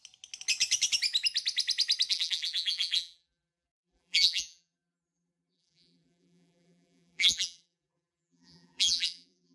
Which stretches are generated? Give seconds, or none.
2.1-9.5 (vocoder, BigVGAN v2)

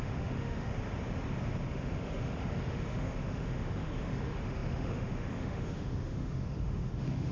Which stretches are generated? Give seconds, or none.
0.0-0.7 (autoencoder, DAC-VAE); 1.7-7.3